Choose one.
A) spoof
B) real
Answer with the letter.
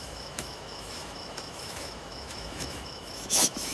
A